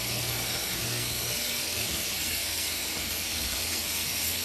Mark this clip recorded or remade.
remade